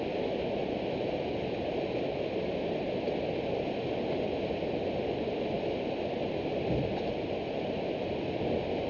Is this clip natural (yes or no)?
yes